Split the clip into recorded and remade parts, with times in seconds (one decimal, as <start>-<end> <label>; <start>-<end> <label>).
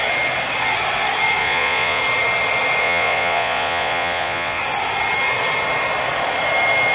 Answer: 0.0-1.4 recorded; 1.4-2.0 remade; 2.0-2.8 recorded; 2.8-4.6 remade; 4.6-6.9 recorded